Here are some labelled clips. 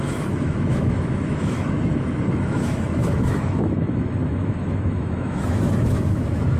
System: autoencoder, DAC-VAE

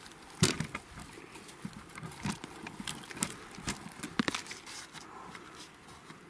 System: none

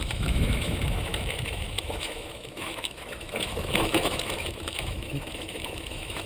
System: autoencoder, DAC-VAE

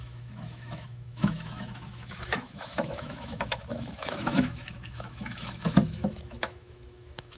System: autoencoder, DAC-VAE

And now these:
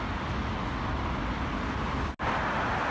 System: none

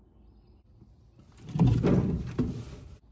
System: none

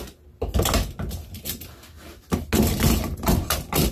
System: none